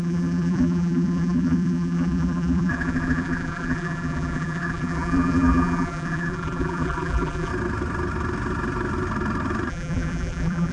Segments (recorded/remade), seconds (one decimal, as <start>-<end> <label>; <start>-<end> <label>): 0.0-7.5 remade; 7.5-9.7 recorded; 9.7-10.7 remade